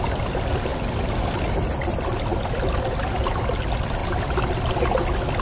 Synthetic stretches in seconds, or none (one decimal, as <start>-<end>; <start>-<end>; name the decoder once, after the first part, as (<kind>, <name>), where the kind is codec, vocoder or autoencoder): none